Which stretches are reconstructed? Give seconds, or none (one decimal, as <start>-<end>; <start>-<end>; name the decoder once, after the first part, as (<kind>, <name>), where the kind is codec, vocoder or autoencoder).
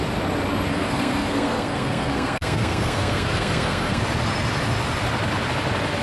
0.7-4.0 (codec, SNAC)